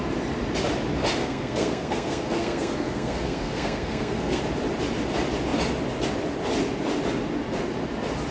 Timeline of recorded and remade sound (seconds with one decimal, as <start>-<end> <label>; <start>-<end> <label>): 0.0-1.2 recorded; 1.2-4.4 remade; 4.4-8.3 recorded